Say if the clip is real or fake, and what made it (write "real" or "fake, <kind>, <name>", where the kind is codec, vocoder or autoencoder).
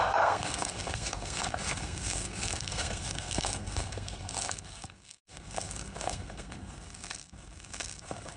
fake, codec, SNAC